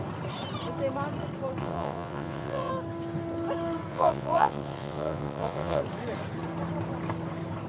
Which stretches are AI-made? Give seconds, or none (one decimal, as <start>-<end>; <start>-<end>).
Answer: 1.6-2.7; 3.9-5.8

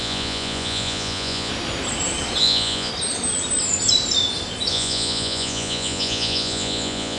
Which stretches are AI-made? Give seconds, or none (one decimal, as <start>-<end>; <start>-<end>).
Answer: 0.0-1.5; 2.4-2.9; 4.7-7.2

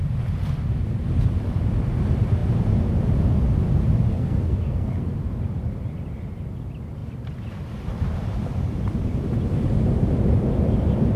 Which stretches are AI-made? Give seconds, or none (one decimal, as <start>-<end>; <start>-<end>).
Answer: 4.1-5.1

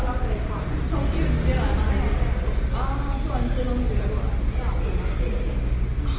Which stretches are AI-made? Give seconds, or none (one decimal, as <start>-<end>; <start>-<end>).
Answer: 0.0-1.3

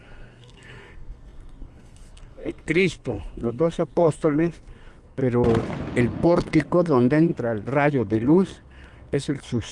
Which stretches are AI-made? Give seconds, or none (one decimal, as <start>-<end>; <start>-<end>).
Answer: 0.0-5.2; 6.1-7.3; 7.9-9.7